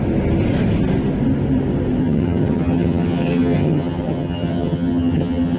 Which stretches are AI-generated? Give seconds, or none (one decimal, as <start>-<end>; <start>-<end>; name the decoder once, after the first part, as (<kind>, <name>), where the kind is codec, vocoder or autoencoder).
2.0-5.6 (vocoder, HiFi-GAN)